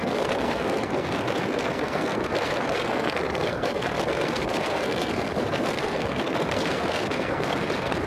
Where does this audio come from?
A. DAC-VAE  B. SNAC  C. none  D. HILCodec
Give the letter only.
B